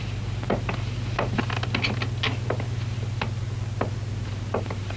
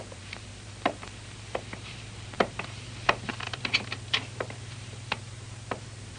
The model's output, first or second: second